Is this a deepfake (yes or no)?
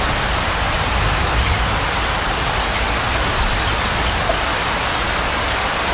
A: no